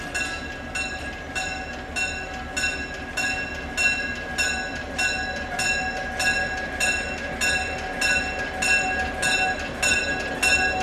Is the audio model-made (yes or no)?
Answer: no